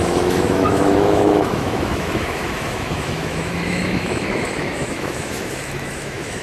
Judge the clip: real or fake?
fake